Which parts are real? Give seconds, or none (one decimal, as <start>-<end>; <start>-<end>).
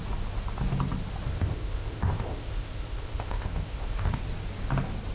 0.0-1.3; 4.2-5.1